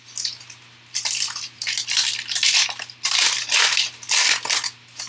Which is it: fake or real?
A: real